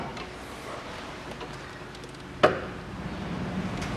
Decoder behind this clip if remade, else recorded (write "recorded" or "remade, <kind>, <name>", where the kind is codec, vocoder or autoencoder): recorded